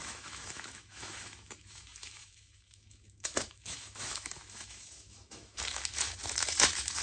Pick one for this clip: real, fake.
fake